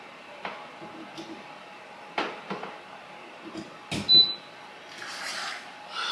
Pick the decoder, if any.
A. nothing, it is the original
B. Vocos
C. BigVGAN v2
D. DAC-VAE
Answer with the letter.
A